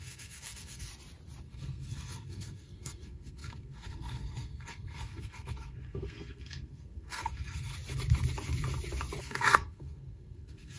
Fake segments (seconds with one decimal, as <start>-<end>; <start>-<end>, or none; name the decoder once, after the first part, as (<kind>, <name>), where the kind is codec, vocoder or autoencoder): 0.0-0.9 (codec, SNAC); 1.4-7.7; 9.2-10.8